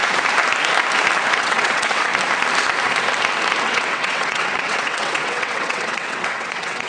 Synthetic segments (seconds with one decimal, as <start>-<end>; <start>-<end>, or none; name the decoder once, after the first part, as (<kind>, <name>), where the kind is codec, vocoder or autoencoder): 1.4-2.1 (vocoder, WaveNeXt); 3.6-6.9